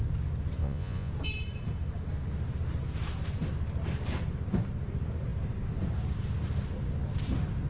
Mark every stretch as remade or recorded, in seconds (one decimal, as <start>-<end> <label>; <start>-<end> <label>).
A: 0.0-0.6 recorded; 0.6-1.1 remade; 1.1-7.7 recorded